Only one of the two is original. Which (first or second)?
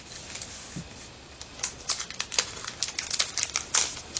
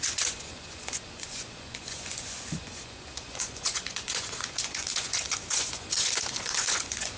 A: first